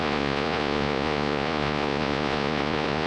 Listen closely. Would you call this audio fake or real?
fake